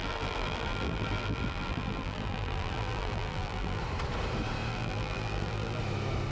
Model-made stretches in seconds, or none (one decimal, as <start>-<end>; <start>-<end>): 0.0-3.8; 4.7-5.8